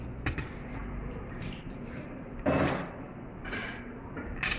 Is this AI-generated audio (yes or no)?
no